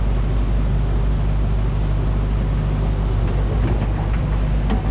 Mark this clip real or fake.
real